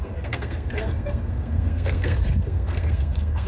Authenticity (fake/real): fake